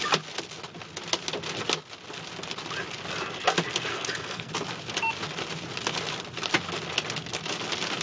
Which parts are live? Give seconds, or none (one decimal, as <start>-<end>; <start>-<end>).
0.0-3.9; 4.5-8.0